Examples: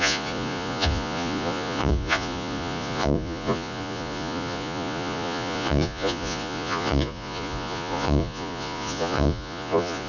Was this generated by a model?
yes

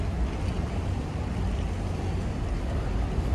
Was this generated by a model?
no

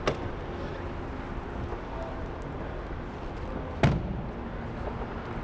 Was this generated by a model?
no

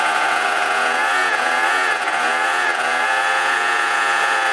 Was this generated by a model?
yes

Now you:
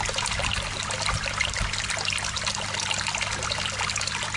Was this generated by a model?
no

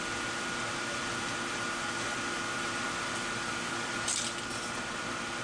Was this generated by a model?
no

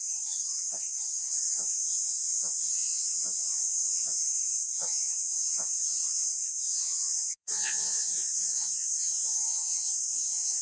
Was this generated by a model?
yes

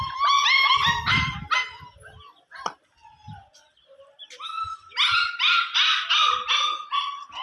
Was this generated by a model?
no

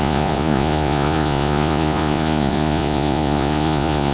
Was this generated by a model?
yes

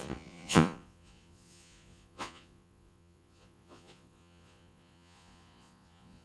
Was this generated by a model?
yes